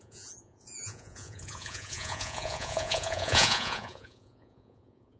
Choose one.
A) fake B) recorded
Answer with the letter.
A